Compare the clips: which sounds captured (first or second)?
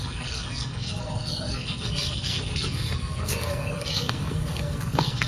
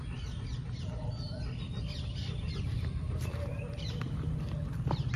second